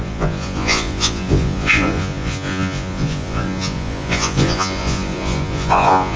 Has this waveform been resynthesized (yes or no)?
yes